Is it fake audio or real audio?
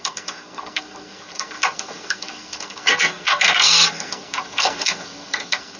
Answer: fake